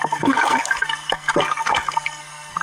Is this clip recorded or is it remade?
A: remade